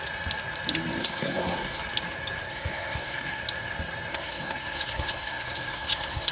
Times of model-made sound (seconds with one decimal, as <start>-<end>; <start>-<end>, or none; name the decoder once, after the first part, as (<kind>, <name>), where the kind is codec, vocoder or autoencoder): 1.0-1.8 (codec, SNAC); 2.5-3.4; 4.1-6.3